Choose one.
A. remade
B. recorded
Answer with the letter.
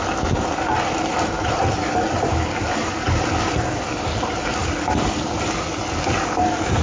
B